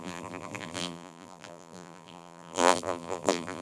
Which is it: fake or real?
fake